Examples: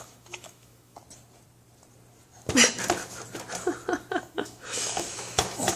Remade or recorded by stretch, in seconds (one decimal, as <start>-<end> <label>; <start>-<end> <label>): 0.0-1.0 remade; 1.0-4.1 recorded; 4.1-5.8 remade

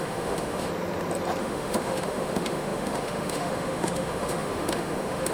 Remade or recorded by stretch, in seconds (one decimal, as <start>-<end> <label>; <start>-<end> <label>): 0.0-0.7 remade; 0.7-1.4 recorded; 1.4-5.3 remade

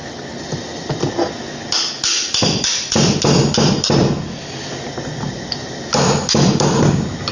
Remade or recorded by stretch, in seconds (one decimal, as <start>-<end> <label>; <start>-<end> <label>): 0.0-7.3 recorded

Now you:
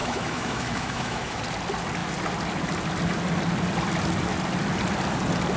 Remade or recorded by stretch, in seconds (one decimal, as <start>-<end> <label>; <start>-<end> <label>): 0.0-1.4 remade; 1.4-5.6 recorded